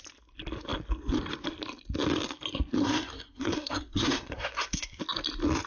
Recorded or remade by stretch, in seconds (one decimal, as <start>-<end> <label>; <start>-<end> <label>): 0.0-2.8 recorded; 2.8-5.0 remade; 5.0-5.7 recorded